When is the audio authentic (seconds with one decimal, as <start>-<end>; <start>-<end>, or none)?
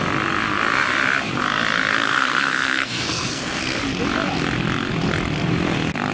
0.0-1.9; 3.6-6.1